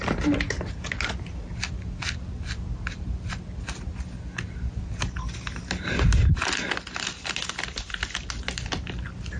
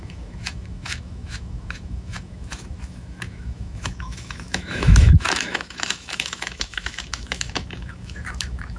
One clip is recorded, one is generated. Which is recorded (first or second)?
first